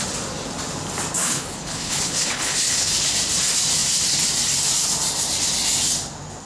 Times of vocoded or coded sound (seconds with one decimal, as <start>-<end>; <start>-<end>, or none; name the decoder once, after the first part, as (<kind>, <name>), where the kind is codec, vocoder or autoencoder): 1.2-3.1 (codec, HILCodec)

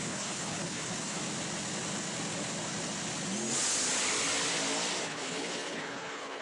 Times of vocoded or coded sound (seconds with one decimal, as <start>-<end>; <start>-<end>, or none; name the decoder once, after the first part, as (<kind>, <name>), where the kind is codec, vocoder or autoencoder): 0.0-1.2 (codec, HILCodec); 5.0-6.4